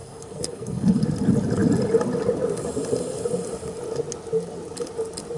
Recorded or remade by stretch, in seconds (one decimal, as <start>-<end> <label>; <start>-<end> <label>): 0.0-1.0 remade; 1.0-5.4 recorded